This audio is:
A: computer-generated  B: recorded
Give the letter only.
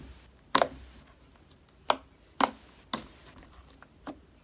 B